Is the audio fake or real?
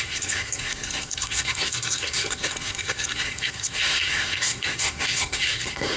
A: fake